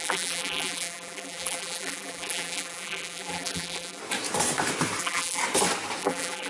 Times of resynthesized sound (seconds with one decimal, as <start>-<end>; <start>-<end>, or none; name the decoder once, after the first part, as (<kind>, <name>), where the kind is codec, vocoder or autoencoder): 0.0-4.0 (vocoder, BigVGAN v2); 5.0-5.4; 6.0-6.5

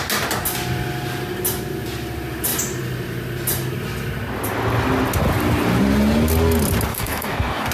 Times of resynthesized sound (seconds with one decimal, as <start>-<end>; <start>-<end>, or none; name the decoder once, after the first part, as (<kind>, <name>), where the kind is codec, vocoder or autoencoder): 6.9-7.7 (codec, DAC)

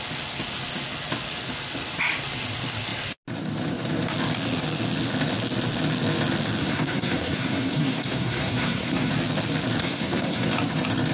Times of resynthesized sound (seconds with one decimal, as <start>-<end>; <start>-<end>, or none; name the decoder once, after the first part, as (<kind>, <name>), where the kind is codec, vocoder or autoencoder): 6.6-9.1 (codec, SNAC); 9.8-10.5

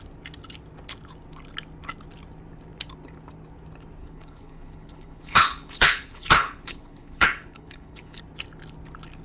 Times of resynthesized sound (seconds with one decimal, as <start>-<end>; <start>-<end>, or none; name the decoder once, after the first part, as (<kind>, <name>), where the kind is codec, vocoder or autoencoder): 4.0-8.2 (codec, HILCodec)

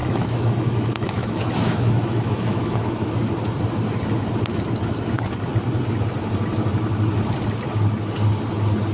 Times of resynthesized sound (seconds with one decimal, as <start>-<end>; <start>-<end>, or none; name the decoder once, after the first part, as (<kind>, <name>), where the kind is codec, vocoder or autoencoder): 0.0-3.1 (autoencoder, DAC-VAE)